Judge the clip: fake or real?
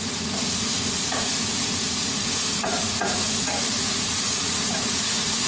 fake